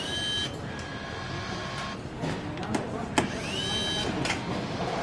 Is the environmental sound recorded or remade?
recorded